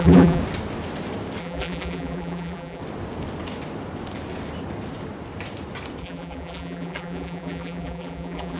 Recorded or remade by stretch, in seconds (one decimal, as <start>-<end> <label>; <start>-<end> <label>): 0.0-0.4 remade; 0.4-1.4 recorded; 1.4-2.8 remade; 2.8-6.0 recorded; 6.0-8.6 remade